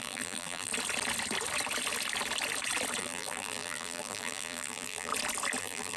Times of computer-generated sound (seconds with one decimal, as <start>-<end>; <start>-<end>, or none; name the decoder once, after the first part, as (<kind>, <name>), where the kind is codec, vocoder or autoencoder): 0.0-0.7 (vocoder, BigVGAN v2); 3.0-5.1; 5.6-6.0